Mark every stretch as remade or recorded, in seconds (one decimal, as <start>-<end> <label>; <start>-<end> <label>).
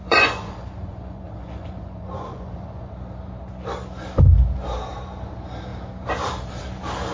0.0-2.9 remade; 2.9-7.1 recorded